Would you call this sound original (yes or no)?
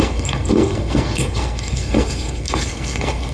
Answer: no